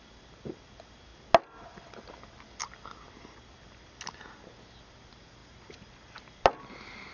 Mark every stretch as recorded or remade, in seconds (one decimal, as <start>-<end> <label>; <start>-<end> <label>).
0.0-7.1 recorded